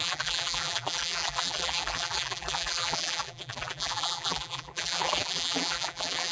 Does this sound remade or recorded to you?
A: remade